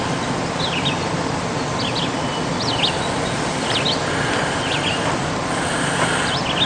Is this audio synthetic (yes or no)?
no